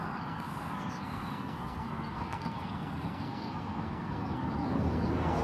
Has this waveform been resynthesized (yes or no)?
yes